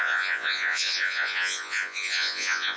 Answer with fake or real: fake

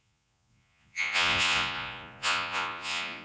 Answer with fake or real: fake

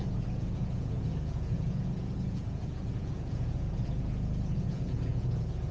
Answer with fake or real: fake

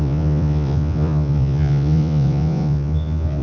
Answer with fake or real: fake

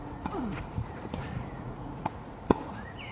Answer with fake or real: fake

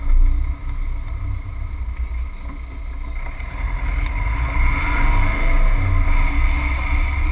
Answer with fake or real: real